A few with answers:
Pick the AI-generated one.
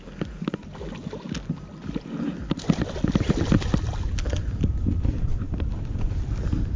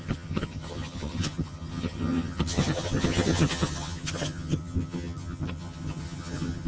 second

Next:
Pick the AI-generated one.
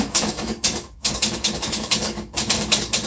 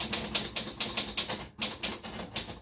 first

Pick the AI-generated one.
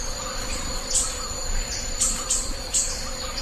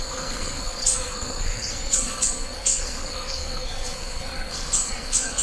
second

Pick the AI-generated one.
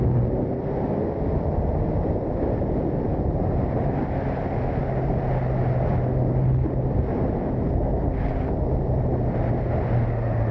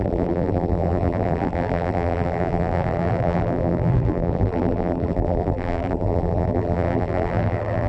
second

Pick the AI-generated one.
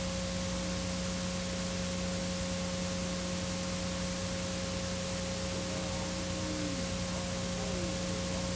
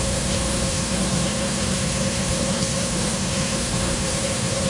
second